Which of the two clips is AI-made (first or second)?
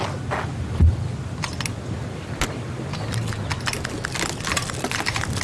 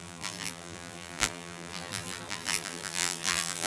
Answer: second